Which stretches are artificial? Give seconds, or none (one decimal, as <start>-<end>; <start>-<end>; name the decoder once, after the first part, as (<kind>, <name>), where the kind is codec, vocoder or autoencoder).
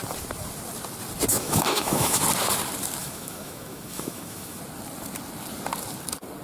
1.3-2.2 (autoencoder, DAC-VAE); 3.0-4.6